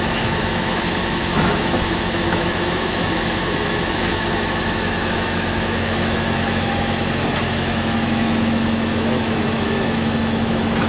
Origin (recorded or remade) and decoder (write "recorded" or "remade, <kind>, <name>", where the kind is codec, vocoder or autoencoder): remade, autoencoder, DAC-VAE